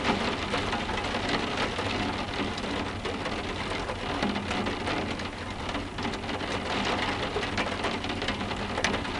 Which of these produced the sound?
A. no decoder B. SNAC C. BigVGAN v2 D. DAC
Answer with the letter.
A